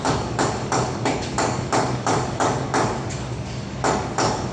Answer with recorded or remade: remade